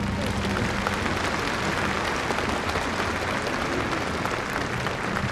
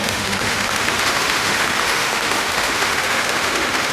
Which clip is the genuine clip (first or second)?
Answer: first